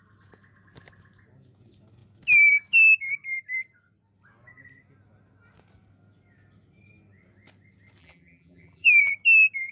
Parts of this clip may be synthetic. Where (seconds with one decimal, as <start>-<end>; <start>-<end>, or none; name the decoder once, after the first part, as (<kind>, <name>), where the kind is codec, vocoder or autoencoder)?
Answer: 8.0-9.1 (vocoder, BigVGAN v2)